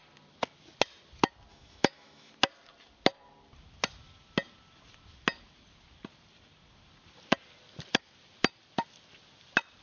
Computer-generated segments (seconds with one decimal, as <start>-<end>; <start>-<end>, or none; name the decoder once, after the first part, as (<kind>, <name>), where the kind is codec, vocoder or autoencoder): 1.5-2.3 (autoencoder, DAC-VAE)